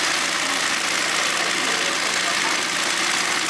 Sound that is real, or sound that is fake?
real